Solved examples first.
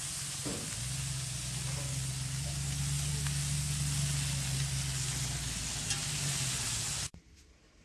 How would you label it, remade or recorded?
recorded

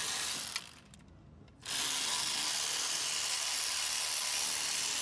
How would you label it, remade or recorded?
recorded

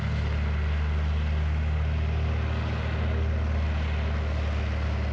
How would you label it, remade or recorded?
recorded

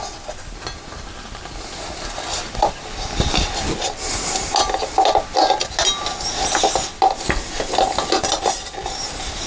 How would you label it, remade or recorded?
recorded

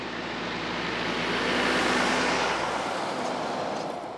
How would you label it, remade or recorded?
recorded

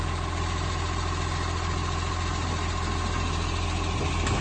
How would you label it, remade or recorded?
recorded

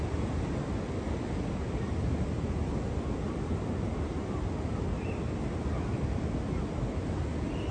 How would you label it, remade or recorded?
recorded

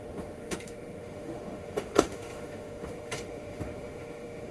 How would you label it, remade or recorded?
remade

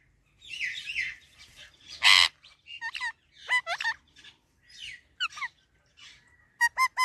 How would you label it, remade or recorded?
recorded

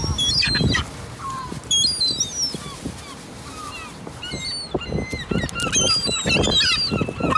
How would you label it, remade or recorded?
recorded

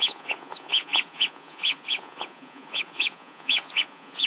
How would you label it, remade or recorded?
remade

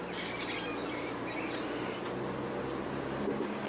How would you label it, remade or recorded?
recorded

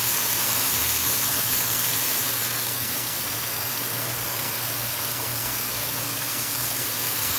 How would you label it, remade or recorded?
remade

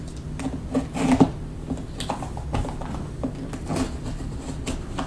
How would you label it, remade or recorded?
recorded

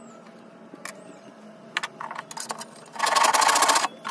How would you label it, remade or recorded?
recorded